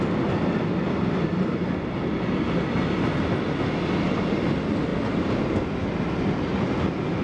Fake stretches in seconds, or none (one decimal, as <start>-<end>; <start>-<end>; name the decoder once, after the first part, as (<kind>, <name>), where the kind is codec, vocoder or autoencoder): none

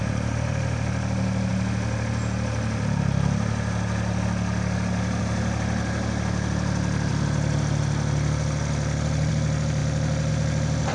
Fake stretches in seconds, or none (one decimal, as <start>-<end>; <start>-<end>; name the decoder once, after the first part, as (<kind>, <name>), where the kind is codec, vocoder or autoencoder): none

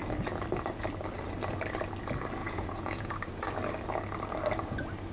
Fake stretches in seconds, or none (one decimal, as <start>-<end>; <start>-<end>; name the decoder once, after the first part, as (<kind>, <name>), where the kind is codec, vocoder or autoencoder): 2.4-3.1 (vocoder, Vocos)